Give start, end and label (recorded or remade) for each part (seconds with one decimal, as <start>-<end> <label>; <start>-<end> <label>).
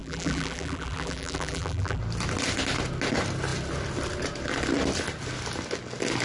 0.0-2.0 remade; 2.0-6.2 recorded